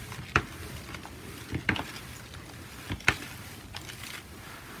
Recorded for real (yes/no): yes